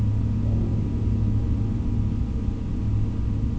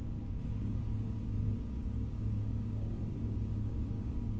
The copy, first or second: second